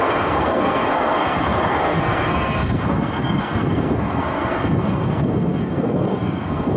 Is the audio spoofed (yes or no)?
yes